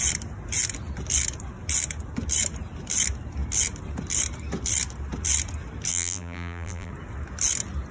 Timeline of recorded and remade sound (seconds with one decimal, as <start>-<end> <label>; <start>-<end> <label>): 0.0-5.9 recorded; 5.9-6.9 remade; 6.9-7.9 recorded

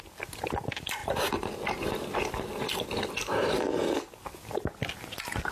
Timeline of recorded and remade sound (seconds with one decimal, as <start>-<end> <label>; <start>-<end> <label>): 0.0-5.5 recorded

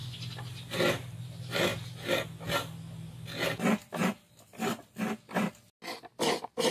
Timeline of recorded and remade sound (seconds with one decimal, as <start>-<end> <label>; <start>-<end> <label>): 0.0-6.7 recorded

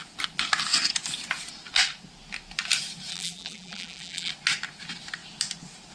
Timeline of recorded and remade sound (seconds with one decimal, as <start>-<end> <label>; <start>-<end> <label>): 0.0-3.1 recorded; 3.1-4.3 remade; 4.3-5.9 recorded